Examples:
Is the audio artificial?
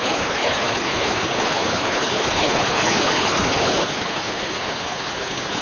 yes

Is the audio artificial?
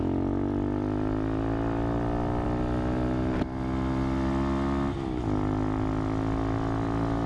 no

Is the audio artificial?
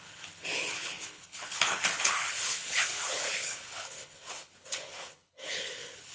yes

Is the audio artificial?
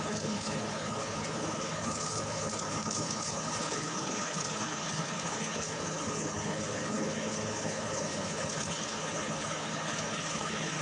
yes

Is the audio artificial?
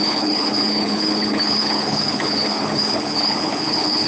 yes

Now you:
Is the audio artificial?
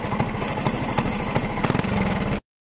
no